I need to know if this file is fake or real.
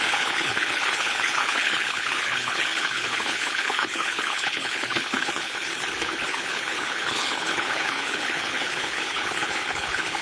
fake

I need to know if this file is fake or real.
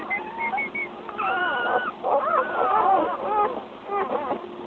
real